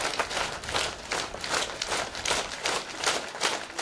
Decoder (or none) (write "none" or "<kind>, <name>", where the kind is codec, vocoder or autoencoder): none